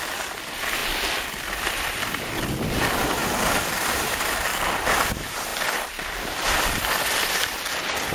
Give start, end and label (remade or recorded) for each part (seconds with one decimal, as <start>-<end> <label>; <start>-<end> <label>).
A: 0.0-3.2 remade; 3.2-3.8 recorded; 3.8-4.5 remade; 4.5-5.1 recorded; 5.1-5.5 remade; 5.5-7.3 recorded; 7.3-8.1 remade